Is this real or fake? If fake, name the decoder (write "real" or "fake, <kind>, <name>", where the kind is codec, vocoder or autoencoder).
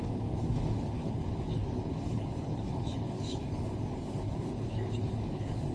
fake, codec, HILCodec